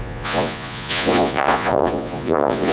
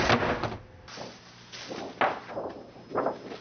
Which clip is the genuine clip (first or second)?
second